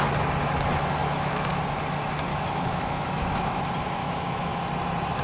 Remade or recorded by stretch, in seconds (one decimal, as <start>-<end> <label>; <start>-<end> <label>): 0.0-1.0 recorded; 1.0-1.6 remade; 1.6-2.3 recorded; 2.3-3.6 remade; 3.6-4.0 recorded; 4.0-4.6 remade; 4.6-5.2 recorded